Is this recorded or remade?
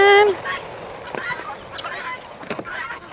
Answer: recorded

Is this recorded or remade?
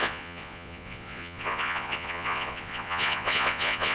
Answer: remade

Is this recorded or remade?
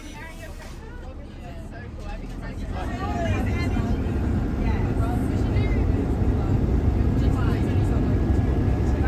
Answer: recorded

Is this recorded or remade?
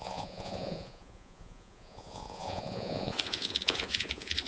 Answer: remade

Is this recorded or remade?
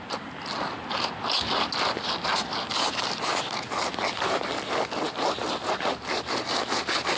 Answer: recorded